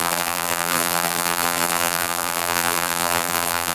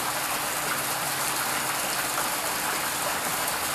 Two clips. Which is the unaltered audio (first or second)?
second